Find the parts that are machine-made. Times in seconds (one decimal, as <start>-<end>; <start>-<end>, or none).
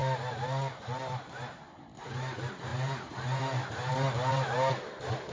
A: none